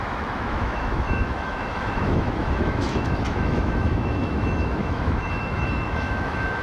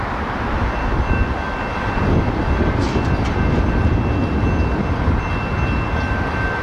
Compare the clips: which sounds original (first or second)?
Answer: second